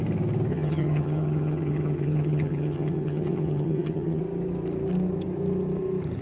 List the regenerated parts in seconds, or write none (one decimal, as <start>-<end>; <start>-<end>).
0.5-4.2